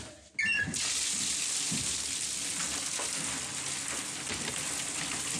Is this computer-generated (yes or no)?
no